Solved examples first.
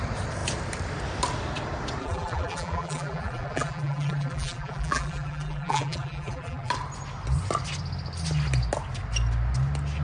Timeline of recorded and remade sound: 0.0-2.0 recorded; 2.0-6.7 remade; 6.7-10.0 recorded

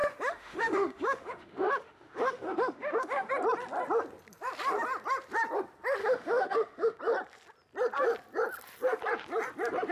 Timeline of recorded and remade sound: 0.0-3.3 remade; 3.3-6.0 recorded; 6.0-7.0 remade; 7.0-9.9 recorded

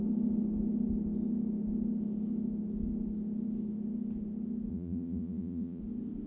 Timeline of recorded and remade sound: 0.0-4.7 recorded; 4.7-5.8 remade; 5.8-6.3 recorded

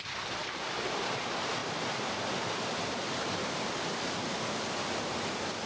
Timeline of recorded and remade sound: 0.0-0.4 recorded; 0.4-1.2 remade; 1.2-1.6 recorded; 1.6-3.7 remade; 3.7-5.7 recorded

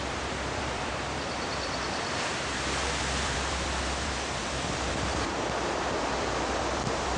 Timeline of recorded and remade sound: 0.0-7.2 remade